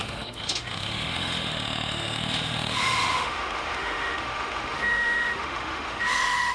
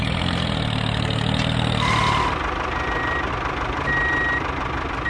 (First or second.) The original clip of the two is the second